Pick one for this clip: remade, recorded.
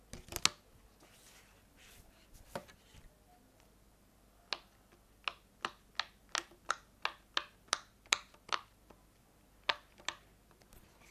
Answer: recorded